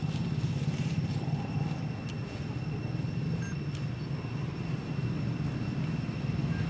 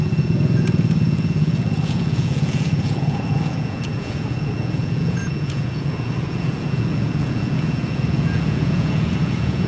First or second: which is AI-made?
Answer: second